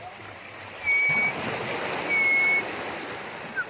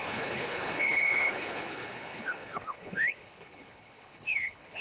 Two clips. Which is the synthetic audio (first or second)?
second